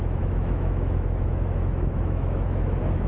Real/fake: fake